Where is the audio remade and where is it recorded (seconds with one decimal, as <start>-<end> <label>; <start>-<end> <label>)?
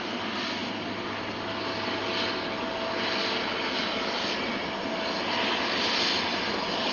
0.0-6.9 recorded